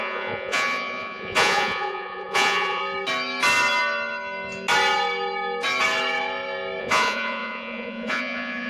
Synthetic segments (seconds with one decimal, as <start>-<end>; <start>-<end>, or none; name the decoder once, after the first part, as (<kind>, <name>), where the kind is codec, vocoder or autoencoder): 0.0-2.8 (vocoder, Vocos); 6.8-8.7